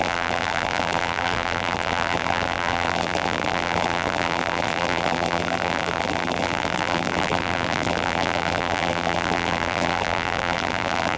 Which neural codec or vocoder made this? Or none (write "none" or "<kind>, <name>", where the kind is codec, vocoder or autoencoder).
vocoder, BigVGAN v2